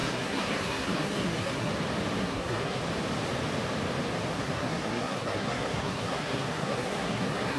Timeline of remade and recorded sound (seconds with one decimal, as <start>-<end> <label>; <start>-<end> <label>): 0.0-1.7 remade; 1.7-2.2 recorded; 2.2-2.8 remade; 2.8-4.3 recorded; 4.3-7.6 remade